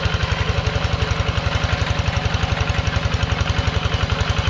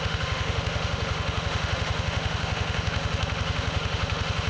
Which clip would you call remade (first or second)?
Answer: second